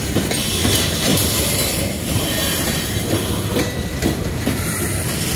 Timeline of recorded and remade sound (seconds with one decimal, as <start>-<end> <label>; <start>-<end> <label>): 0.0-0.5 remade; 0.5-1.1 recorded; 1.1-4.3 remade; 4.3-5.4 recorded